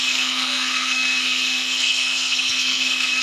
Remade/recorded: remade